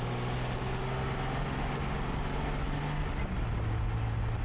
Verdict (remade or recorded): recorded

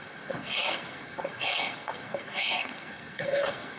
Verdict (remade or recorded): remade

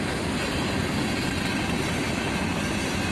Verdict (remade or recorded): remade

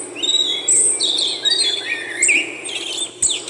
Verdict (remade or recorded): recorded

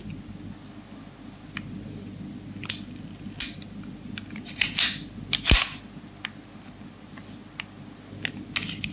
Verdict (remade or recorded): recorded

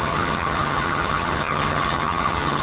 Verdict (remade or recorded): remade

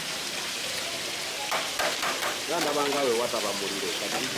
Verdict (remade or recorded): remade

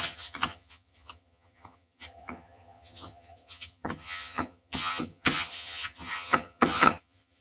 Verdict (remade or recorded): remade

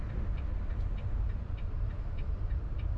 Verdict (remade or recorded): recorded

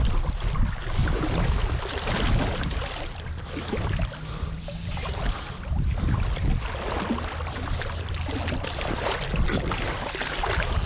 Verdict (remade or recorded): recorded